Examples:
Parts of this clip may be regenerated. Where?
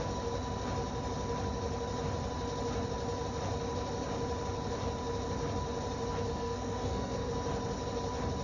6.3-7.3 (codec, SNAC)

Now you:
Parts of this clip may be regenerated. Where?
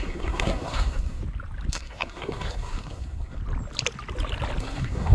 0.0-1.2 (codec, SNAC); 1.7-3.4; 4.6-5.1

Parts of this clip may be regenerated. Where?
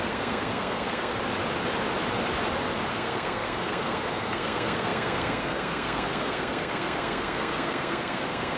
0.0-1.1 (codec, SNAC); 2.9-8.6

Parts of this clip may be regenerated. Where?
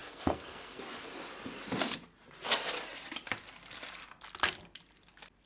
0.0-0.8 (codec, SNAC)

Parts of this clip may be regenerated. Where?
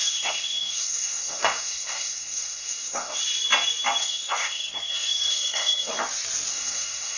0.0-3.2 (codec, SNAC); 4.0-5.9; 6.5-7.2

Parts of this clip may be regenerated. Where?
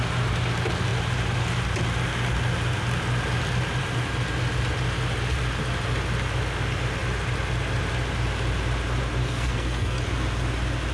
9.2-10.0 (codec, SNAC)